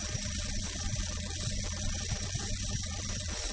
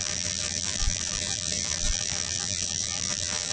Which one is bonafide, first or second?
first